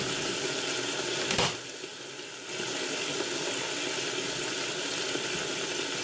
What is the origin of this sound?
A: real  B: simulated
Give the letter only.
A